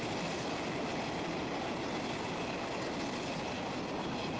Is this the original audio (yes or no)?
yes